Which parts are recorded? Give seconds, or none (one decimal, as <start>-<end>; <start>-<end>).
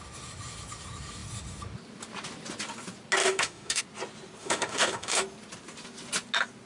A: 0.0-3.2; 3.8-4.4; 5.2-6.7